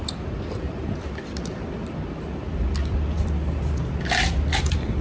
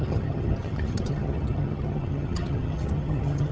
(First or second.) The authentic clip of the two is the first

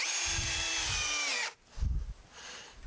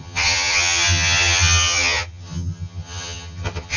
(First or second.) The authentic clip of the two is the first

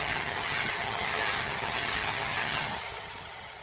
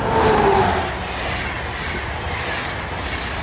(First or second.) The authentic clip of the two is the second